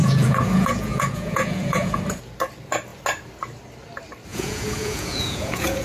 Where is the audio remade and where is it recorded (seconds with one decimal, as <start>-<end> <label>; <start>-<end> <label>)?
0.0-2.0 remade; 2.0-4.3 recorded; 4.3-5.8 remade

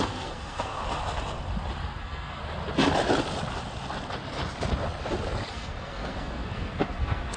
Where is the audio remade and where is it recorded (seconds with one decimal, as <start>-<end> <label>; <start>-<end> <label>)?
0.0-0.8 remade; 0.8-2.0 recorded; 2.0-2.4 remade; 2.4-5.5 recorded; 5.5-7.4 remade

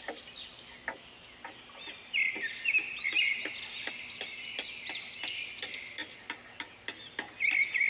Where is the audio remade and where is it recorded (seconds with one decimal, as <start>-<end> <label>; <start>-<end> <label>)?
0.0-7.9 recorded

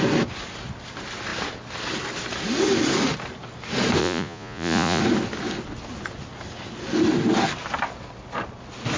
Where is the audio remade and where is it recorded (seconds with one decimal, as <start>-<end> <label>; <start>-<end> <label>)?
0.0-4.0 recorded; 4.0-5.0 remade; 5.0-9.0 recorded

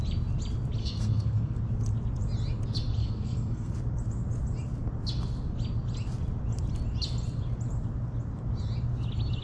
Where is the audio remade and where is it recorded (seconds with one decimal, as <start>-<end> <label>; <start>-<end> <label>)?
0.0-0.8 recorded; 0.8-1.6 remade; 1.6-3.0 recorded; 3.0-3.7 remade; 3.7-9.4 recorded

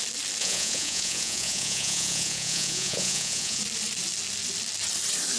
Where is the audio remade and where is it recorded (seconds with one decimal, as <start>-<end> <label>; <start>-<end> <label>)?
0.0-0.4 recorded; 0.4-3.6 remade; 3.6-5.4 recorded

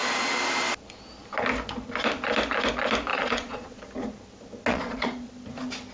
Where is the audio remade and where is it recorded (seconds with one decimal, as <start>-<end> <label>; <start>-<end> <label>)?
0.0-3.1 recorded; 3.1-3.8 remade; 3.8-4.7 recorded; 4.7-5.3 remade; 5.3-5.9 recorded

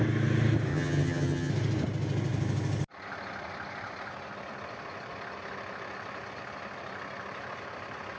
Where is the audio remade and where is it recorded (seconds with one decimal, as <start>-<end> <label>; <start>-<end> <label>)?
0.0-0.7 recorded; 0.7-1.5 remade; 1.5-8.2 recorded